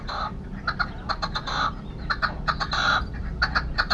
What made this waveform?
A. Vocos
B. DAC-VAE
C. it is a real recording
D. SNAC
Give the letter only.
C